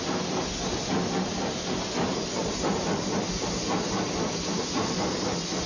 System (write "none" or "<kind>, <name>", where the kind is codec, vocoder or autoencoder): none